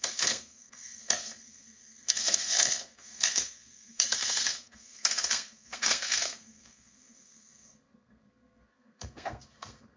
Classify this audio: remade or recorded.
remade